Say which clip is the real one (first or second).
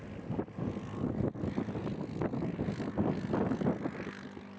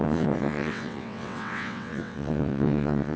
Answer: first